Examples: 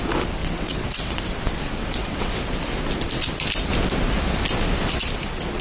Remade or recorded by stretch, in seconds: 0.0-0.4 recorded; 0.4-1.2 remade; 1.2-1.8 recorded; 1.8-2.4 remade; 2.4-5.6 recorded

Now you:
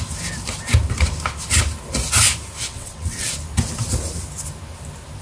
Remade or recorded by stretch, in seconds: 0.0-2.7 recorded; 2.7-3.3 remade; 3.3-5.2 recorded